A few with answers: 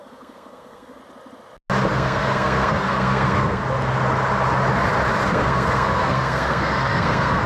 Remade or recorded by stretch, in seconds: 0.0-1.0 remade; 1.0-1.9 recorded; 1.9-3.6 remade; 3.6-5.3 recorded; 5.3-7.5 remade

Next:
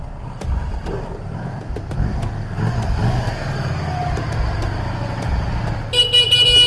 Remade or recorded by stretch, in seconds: 0.0-6.7 recorded